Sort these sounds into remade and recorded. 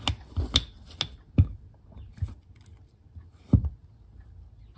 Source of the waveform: recorded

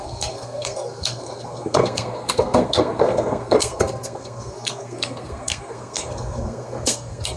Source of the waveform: remade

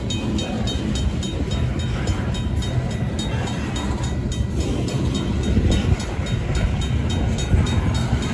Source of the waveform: recorded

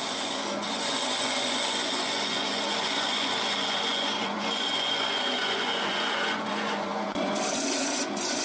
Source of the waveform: remade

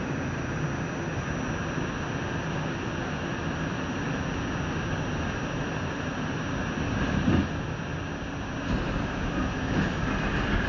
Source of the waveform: recorded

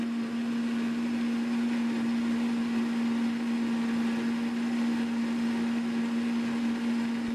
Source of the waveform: recorded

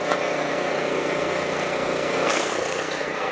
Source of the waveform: remade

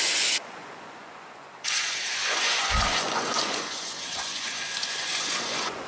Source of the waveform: remade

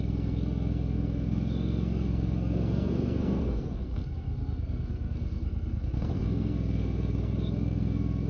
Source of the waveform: remade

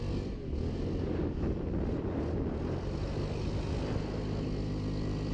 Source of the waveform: recorded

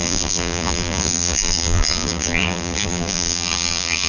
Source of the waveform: remade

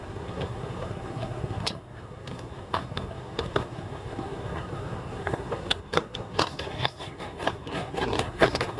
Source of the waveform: remade